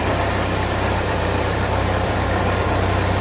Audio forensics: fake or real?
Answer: fake